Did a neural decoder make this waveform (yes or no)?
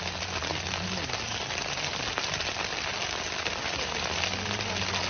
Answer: no